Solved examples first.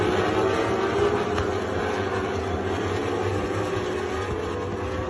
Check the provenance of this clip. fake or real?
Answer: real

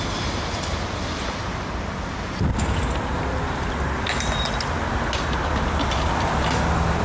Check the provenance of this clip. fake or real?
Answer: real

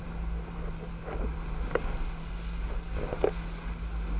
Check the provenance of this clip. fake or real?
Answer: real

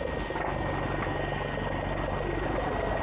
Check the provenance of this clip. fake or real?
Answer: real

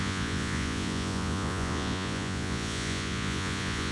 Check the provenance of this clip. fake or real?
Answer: fake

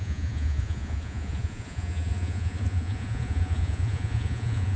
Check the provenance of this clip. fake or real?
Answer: fake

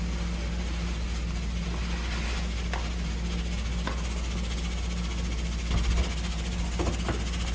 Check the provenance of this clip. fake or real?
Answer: real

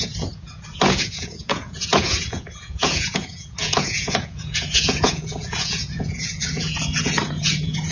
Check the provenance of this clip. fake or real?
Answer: fake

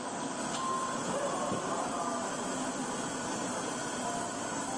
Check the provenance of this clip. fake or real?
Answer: real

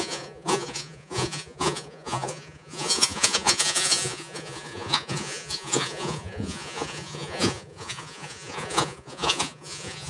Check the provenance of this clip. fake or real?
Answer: fake